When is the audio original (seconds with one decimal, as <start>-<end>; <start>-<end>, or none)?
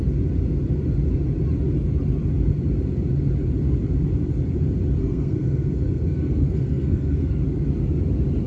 0.0-5.0; 7.4-8.5